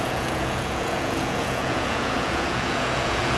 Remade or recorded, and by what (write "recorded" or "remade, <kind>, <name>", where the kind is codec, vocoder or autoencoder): remade, vocoder, Vocos